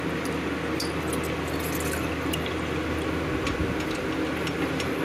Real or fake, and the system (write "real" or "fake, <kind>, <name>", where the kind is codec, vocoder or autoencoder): real